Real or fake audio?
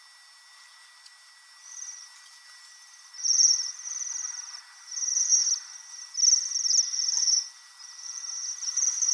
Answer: real